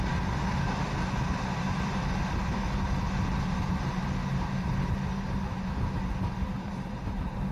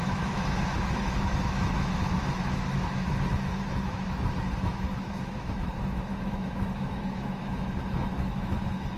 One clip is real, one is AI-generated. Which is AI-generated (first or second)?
second